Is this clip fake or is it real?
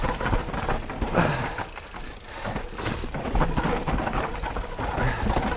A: real